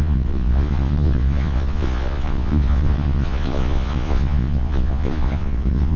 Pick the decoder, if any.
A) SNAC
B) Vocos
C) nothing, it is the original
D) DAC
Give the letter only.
B